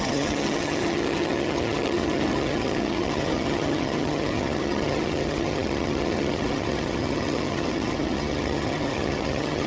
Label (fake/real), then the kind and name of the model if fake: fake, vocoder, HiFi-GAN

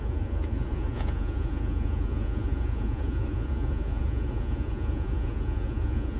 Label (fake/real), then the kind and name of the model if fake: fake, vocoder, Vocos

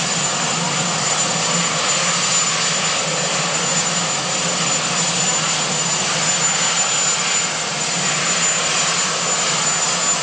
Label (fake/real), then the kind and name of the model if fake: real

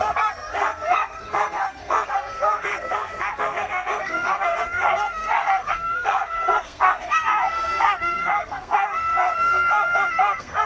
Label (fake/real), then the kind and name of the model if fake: fake, codec, SNAC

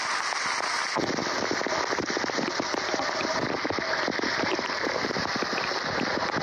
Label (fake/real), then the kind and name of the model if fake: real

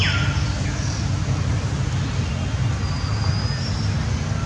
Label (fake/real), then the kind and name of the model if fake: real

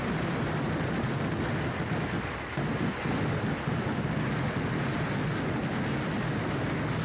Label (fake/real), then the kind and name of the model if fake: real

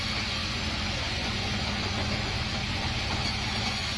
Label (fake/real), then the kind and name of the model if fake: fake, vocoder, Vocos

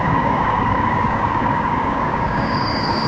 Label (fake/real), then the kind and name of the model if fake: fake, codec, DAC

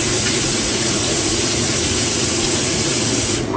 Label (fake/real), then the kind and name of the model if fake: fake, vocoder, Vocos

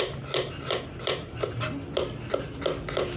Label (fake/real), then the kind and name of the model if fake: real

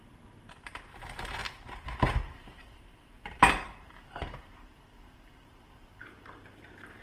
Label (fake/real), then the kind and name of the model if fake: fake, vocoder, BigVGAN v2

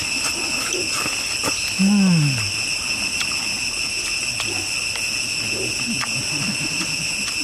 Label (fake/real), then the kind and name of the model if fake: real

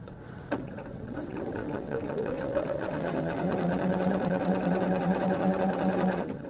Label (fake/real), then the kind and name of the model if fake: fake, vocoder, WaveNeXt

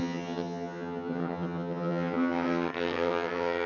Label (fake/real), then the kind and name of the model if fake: fake, vocoder, HiFi-GAN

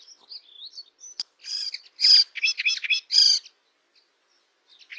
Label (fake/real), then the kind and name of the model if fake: real